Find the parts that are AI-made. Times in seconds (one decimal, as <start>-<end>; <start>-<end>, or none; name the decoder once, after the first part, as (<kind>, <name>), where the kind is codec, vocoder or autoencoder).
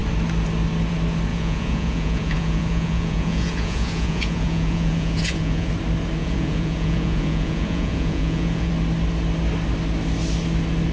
1.3-5.7 (vocoder, Vocos); 6.2-8.7